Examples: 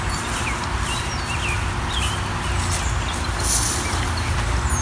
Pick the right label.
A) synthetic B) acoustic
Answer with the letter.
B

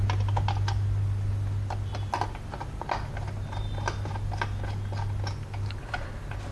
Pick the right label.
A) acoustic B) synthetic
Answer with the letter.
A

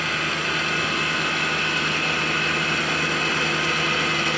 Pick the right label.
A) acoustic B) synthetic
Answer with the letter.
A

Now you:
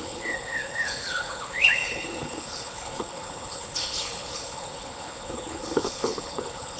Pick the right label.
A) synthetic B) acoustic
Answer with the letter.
A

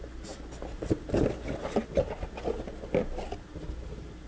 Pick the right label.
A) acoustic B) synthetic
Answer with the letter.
A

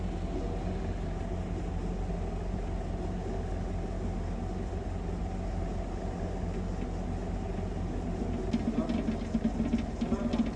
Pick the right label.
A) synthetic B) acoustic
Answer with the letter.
B